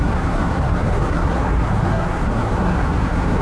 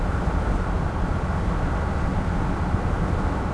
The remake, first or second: first